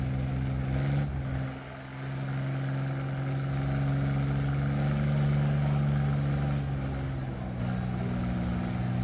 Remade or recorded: recorded